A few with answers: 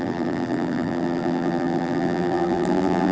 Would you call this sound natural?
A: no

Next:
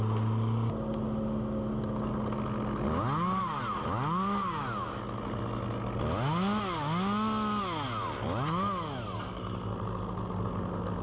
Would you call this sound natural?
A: yes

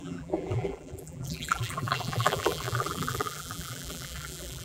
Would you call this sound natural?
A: no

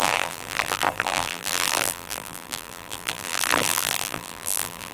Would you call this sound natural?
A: no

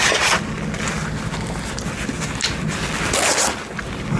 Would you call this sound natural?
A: yes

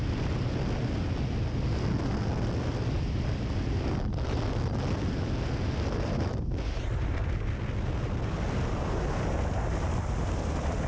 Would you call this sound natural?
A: yes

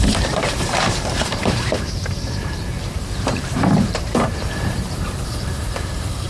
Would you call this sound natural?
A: no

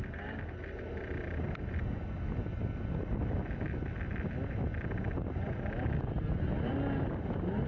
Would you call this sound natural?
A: yes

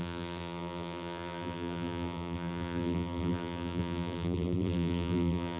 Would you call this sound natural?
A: no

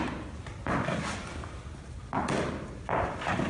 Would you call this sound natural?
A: yes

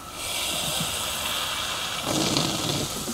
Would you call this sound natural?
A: yes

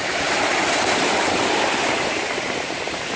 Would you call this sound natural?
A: no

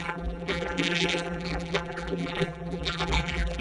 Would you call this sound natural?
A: no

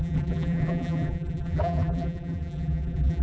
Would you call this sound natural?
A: no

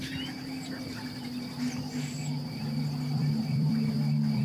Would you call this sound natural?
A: no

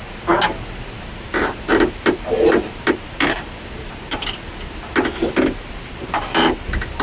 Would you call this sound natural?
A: yes